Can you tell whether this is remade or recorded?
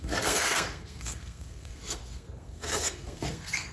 remade